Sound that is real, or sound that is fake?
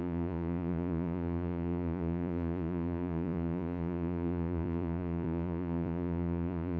fake